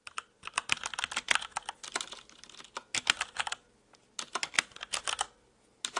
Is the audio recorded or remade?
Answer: recorded